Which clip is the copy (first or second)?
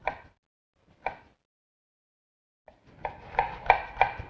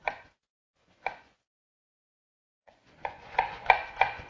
second